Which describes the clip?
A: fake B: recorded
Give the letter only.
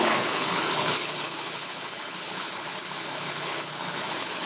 A